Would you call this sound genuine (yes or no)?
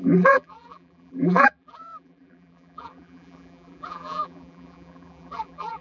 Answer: no